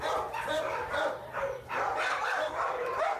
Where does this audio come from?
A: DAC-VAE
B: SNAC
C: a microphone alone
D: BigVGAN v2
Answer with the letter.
D